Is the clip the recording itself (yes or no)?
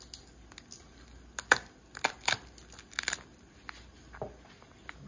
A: yes